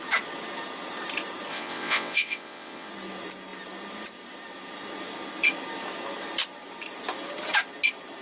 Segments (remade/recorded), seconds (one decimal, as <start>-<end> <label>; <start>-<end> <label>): 0.0-1.5 recorded; 1.5-2.9 remade; 2.9-8.2 recorded

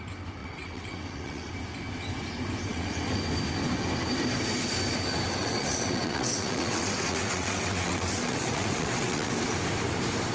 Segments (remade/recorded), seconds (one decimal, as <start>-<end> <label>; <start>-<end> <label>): 0.0-0.4 recorded; 0.4-1.5 remade; 1.5-2.7 recorded; 2.7-3.2 remade; 3.2-5.4 recorded; 5.4-9.3 remade; 9.3-10.3 recorded

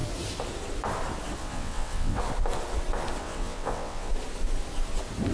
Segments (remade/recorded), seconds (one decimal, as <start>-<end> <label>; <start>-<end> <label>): 0.0-1.4 recorded; 1.4-2.2 remade; 2.2-3.2 recorded; 3.2-4.1 remade; 4.1-5.3 recorded

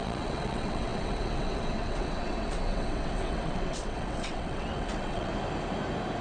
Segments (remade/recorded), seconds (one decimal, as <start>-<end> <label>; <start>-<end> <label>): 0.0-5.3 remade; 5.3-6.2 recorded

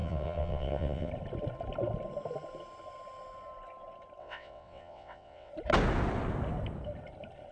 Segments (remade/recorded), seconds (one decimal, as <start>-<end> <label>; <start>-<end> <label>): 0.0-1.1 remade; 1.1-4.2 recorded; 4.2-5.5 remade; 5.5-7.5 recorded

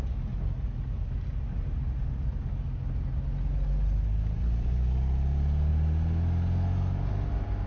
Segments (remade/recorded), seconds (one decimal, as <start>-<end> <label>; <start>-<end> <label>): 0.0-7.7 recorded

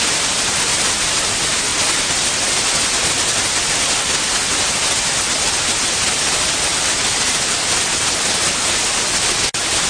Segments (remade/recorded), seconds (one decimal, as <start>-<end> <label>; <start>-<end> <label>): 0.0-9.9 recorded

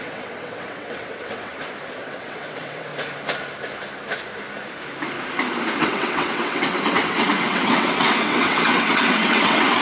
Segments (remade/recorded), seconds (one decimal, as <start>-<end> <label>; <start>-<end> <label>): 0.0-1.5 remade; 1.5-2.0 recorded; 2.0-2.9 remade; 2.9-5.8 recorded; 5.8-9.8 remade